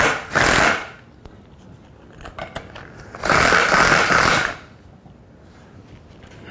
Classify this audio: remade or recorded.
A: recorded